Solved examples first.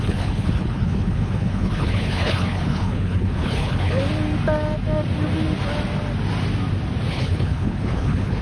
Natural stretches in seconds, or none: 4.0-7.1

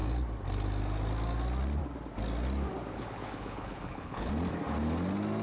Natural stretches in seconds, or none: 0.0-2.9; 4.3-5.4

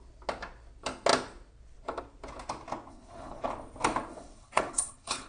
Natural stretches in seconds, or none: 0.0-2.9; 3.5-4.1

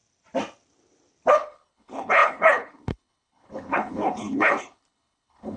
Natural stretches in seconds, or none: 0.0-1.3

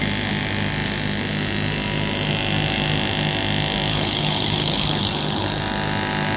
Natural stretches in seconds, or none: 0.0-3.9; 5.6-6.4